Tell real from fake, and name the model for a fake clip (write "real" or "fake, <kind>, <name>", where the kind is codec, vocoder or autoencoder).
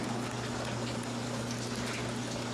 real